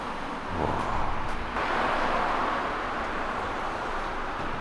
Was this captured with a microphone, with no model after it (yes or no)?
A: yes